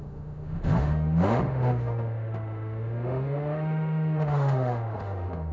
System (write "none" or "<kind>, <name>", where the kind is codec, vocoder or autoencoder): autoencoder, DAC-VAE